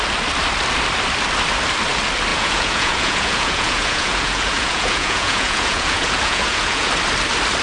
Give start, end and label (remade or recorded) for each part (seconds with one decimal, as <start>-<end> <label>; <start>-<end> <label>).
0.0-2.3 recorded; 2.3-6.9 remade; 6.9-7.6 recorded